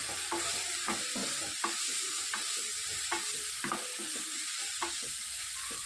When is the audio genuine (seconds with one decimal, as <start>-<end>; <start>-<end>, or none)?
0.0-5.9